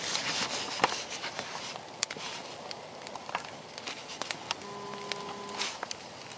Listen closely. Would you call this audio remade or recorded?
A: recorded